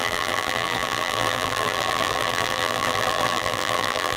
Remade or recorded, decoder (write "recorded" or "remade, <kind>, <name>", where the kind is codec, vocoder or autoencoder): remade, vocoder, BigVGAN v2